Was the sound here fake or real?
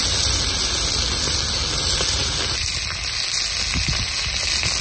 real